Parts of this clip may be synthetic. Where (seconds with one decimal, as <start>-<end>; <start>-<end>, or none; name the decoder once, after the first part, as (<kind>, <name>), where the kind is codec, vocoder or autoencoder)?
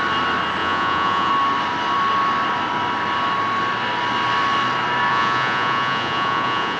0.6-1.3 (vocoder, Vocos); 5.1-6.8